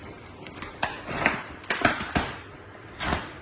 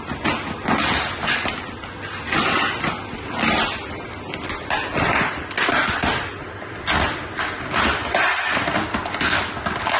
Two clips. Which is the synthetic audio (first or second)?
first